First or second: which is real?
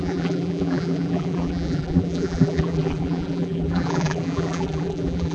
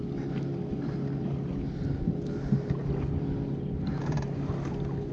second